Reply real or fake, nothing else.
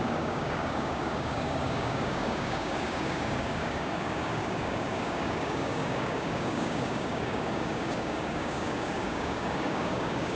fake